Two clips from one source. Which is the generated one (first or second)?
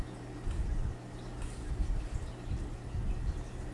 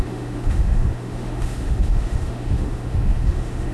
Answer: second